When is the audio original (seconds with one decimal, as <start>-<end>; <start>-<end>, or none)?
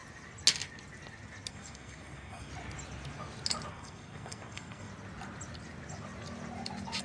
0.0-1.5; 2.5-3.7; 4.9-7.0